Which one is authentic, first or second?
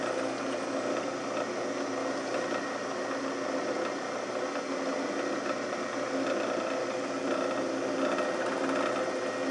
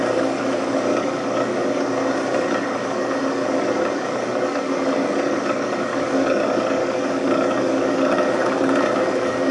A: first